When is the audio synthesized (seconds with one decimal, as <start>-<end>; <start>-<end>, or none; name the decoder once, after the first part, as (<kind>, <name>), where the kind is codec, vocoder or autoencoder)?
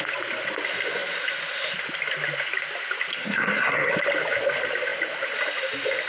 3.1-3.9 (codec, SNAC)